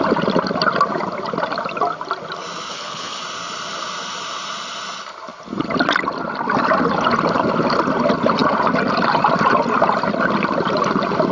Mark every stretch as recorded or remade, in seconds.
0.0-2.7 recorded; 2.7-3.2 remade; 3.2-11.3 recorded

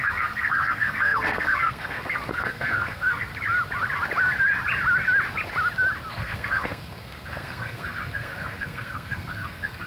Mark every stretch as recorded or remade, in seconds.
0.0-3.3 remade; 3.3-6.1 recorded; 6.1-9.9 remade

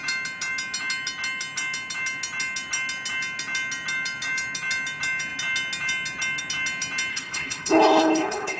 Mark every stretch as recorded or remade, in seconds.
0.0-7.1 recorded; 7.1-8.6 remade